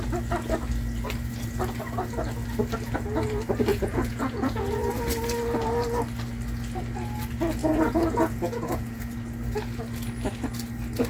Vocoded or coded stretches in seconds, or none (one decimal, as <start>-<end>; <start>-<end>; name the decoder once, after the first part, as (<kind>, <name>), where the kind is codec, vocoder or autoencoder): 3.7-4.7 (vocoder, Vocos); 7.6-9.0